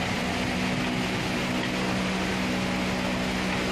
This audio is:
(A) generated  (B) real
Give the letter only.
B